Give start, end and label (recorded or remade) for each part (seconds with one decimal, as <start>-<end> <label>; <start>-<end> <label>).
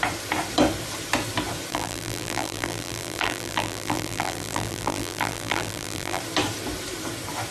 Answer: 0.0-1.7 recorded; 1.7-6.2 remade; 6.2-7.5 recorded